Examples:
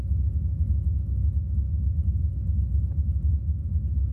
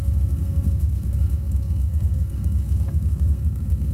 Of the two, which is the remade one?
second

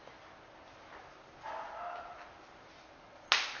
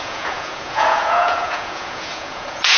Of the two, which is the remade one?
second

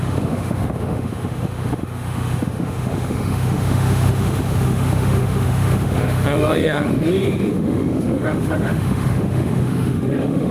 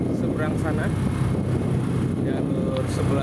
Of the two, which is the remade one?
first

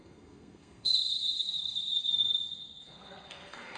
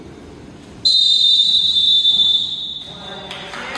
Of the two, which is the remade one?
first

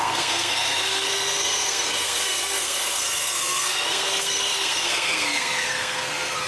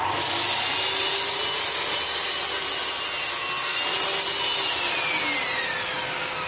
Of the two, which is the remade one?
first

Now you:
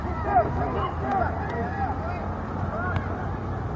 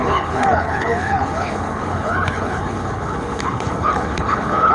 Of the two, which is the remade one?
second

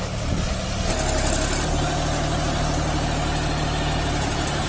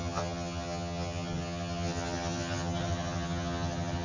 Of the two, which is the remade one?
second